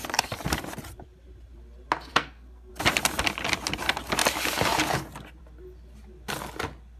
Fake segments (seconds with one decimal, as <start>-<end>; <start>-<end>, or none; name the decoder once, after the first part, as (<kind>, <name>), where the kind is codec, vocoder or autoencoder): 2.1-2.7 (codec, SNAC)